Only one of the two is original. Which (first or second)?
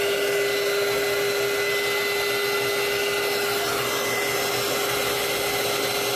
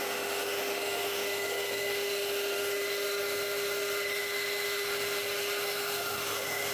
first